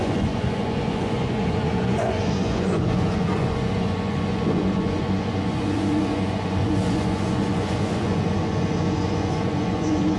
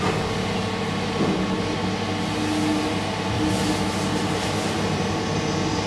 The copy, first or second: first